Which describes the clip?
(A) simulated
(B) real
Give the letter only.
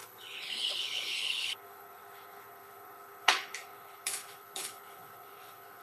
A